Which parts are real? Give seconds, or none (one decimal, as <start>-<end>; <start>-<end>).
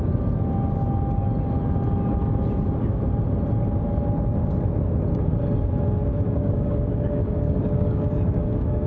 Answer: 0.0-6.0